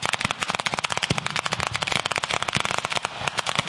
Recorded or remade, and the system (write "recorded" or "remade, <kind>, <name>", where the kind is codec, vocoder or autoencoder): recorded